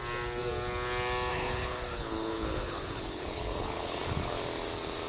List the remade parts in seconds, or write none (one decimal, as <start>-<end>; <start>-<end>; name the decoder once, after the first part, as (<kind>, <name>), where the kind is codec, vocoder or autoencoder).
1.3-4.4 (codec, HILCodec)